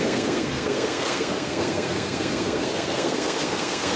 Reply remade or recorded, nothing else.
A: remade